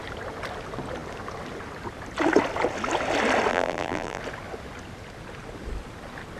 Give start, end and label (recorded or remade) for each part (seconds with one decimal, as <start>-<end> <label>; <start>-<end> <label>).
0.0-3.5 recorded; 3.5-4.2 remade; 4.2-6.4 recorded